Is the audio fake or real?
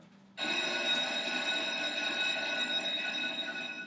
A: real